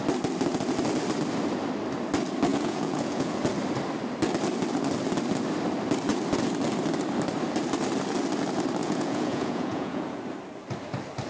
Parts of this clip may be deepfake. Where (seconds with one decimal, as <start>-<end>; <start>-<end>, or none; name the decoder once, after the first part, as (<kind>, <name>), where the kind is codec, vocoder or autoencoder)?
2.5-3.4 (vocoder, Vocos); 8.8-10.2